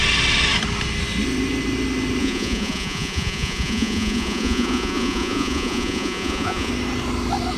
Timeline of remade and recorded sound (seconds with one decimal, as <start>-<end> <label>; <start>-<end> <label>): 0.0-2.2 recorded; 2.2-6.7 remade; 6.7-7.6 recorded